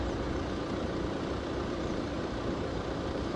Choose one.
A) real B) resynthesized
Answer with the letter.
B